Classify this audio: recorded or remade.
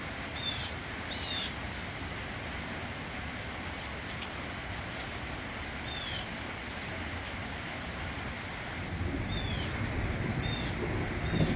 recorded